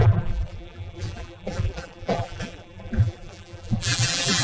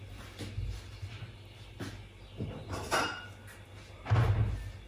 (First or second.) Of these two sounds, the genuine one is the second